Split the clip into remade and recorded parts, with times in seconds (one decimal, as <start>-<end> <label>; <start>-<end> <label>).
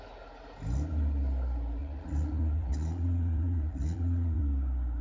0.0-1.8 recorded; 1.8-4.4 remade; 4.4-5.0 recorded